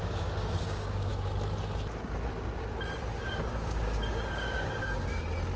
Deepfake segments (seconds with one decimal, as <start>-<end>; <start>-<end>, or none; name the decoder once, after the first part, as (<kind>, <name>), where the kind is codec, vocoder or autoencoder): 0.0-1.1 (codec, DAC); 3.2-5.1